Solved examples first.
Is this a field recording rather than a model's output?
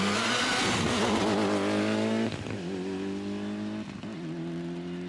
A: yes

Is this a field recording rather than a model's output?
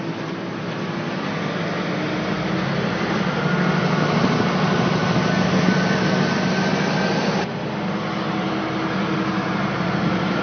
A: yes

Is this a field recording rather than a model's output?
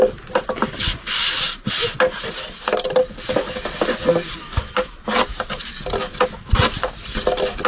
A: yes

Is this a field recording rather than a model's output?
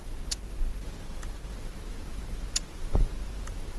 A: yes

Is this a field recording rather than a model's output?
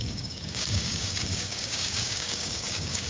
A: no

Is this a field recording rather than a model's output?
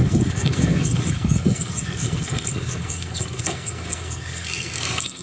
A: no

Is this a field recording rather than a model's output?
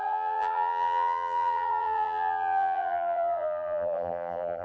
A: no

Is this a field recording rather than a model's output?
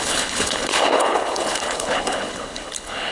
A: no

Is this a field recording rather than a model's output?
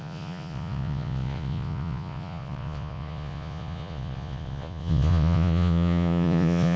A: no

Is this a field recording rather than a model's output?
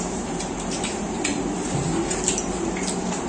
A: yes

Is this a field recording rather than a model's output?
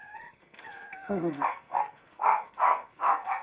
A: no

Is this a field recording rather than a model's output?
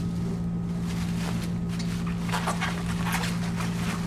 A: yes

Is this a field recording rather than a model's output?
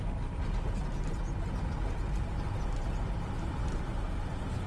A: yes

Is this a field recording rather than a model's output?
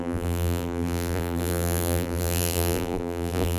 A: no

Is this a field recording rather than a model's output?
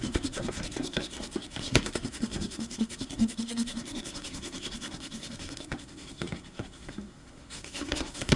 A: no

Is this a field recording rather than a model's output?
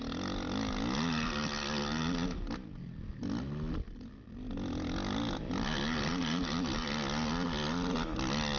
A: yes